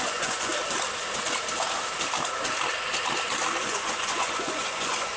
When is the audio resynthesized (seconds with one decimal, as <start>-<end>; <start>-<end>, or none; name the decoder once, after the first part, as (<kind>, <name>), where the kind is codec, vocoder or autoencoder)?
0.0-0.5 (vocoder, Vocos); 3.6-5.2